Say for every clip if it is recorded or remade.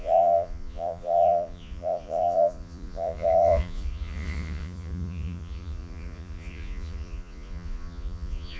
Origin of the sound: remade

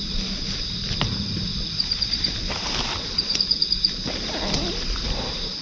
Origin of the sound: remade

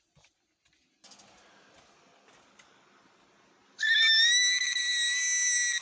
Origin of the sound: recorded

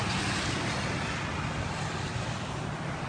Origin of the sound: recorded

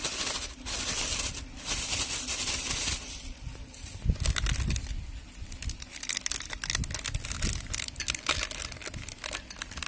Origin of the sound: recorded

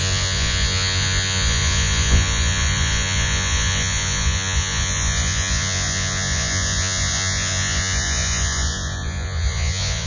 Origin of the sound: remade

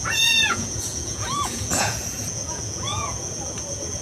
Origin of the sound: remade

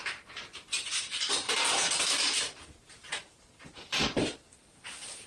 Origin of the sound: remade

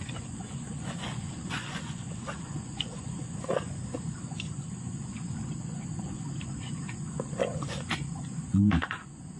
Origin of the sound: remade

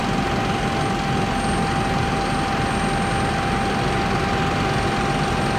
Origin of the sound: recorded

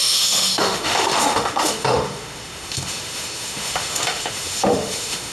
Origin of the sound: remade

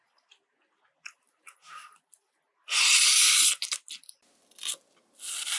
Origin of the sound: recorded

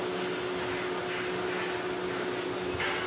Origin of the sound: recorded